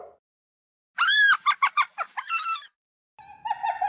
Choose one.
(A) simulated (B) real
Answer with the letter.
B